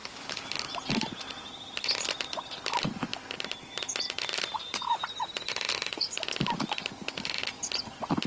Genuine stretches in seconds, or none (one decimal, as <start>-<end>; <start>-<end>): 0.0-8.3